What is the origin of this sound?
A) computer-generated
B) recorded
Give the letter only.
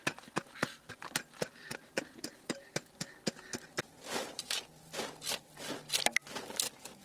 B